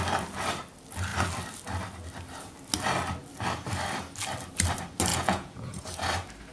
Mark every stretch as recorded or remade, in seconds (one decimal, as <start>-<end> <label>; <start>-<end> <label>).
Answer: 0.0-5.1 recorded; 5.1-5.8 remade; 5.8-6.5 recorded